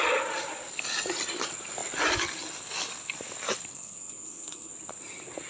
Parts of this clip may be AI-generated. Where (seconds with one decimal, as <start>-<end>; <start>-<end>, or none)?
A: 3.7-4.7